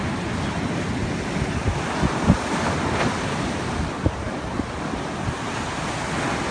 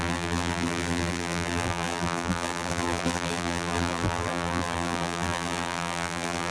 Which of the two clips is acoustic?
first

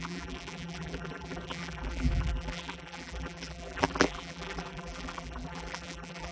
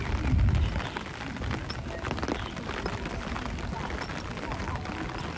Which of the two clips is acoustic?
second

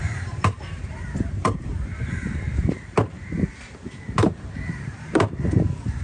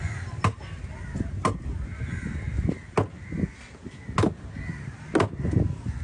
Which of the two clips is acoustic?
second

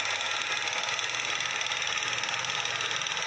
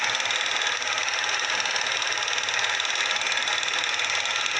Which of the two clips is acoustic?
first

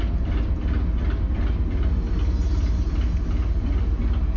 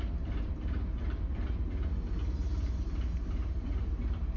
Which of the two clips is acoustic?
first